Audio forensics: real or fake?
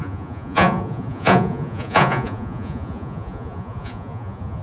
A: fake